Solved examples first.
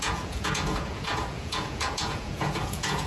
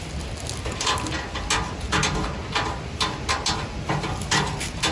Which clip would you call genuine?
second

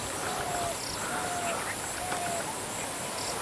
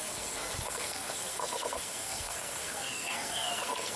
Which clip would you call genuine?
first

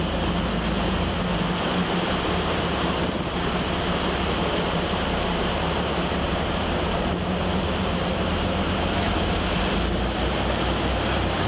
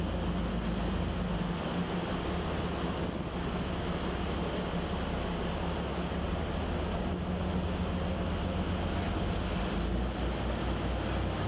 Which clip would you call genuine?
second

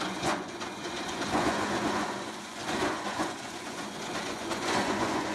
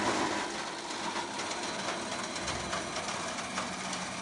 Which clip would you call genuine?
second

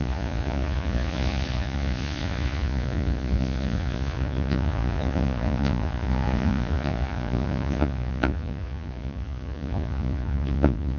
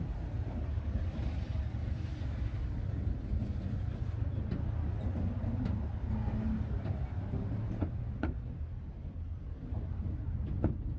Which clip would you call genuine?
second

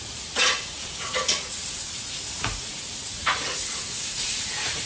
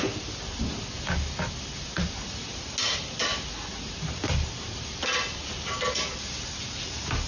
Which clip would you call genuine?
second